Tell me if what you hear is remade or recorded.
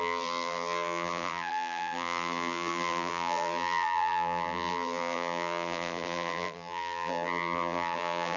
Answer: remade